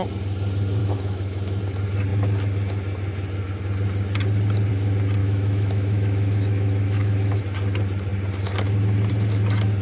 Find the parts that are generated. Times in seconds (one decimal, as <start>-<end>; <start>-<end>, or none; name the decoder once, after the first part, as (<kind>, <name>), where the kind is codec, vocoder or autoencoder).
0.8-1.6 (autoencoder, DAC-VAE); 5.2-7.4